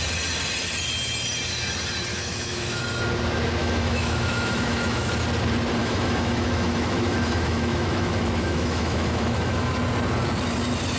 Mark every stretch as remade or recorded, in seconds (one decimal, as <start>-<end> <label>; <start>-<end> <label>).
0.0-2.1 recorded; 2.1-2.8 remade; 2.8-3.6 recorded; 3.6-5.1 remade; 5.1-5.8 recorded; 5.8-9.7 remade; 9.7-11.0 recorded